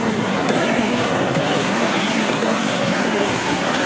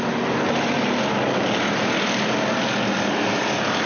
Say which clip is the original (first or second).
second